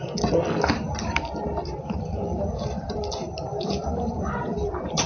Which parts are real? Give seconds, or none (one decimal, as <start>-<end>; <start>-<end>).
0.0-1.6